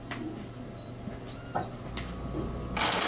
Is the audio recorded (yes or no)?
yes